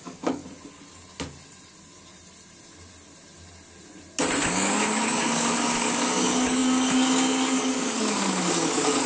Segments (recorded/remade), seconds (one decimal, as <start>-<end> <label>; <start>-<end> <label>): 0.0-0.4 remade; 0.4-4.4 recorded; 4.4-9.1 remade